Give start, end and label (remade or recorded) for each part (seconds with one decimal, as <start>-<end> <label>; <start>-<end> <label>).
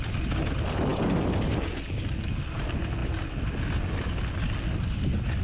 0.0-5.4 recorded